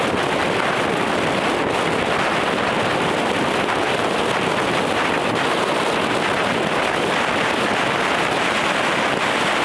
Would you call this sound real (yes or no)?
yes